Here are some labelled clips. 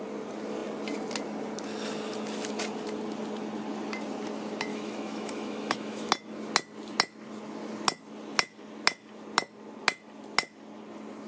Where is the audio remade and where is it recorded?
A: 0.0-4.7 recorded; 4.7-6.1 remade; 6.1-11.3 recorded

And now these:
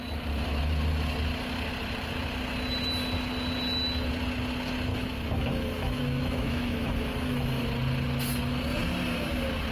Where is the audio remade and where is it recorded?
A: 0.0-4.9 recorded; 4.9-7.6 remade; 7.6-9.7 recorded

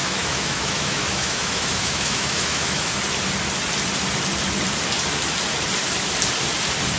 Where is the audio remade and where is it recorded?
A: 0.0-2.9 remade; 2.9-7.0 recorded

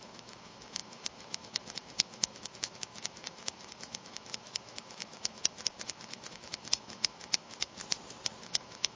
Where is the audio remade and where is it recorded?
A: 0.0-7.8 remade; 7.8-8.4 recorded; 8.4-9.0 remade